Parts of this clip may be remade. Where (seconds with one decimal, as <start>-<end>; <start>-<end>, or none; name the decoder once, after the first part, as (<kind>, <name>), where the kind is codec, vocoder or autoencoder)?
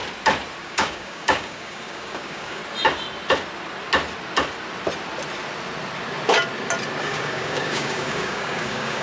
0.6-2.6 (codec, DAC); 7.0-9.0